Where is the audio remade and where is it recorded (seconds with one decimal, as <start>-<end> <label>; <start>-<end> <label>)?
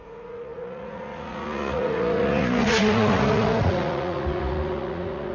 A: 0.0-5.3 remade